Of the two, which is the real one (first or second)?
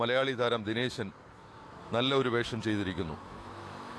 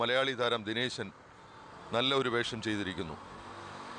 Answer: second